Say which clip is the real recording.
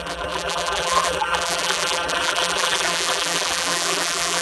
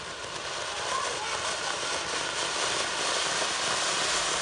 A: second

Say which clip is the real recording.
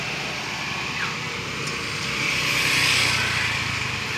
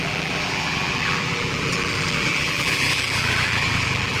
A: first